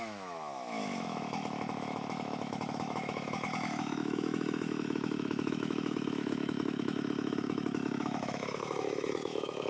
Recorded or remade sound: remade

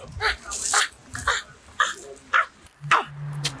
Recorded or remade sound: recorded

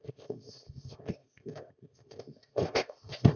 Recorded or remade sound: remade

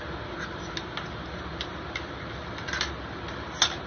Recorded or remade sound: recorded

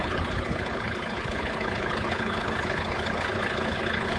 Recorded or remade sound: remade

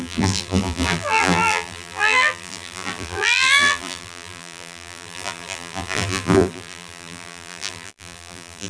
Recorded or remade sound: remade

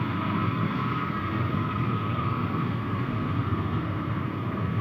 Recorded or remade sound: remade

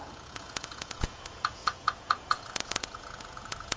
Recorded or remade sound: remade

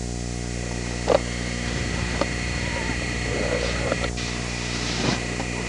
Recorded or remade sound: recorded